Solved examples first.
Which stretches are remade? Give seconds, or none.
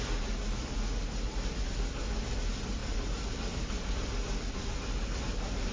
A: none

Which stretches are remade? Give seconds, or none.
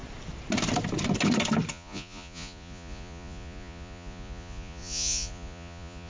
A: 1.7-6.1 (vocoder, Vocos)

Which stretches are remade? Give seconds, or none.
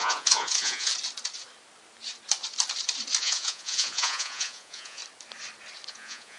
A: 0.0-0.9 (vocoder, Vocos); 3.2-5.0; 5.9-6.4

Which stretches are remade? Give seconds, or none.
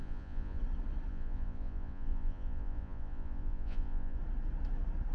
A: 0.0-0.6 (vocoder, Vocos); 1.1-4.2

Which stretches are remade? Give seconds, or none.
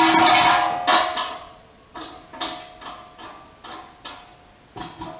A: 1.2-2.2 (vocoder, Vocos)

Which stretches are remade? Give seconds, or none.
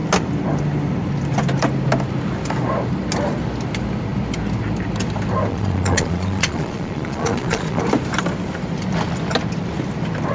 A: 5.5-7.8 (vocoder, Vocos)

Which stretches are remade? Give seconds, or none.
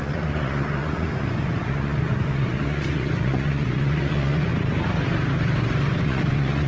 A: 0.0-4.5 (vocoder, Vocos); 6.0-6.7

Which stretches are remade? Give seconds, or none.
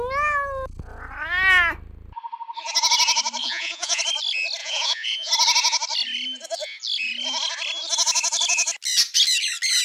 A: 3.4-4.0 (vocoder, Vocos); 4.6-5.3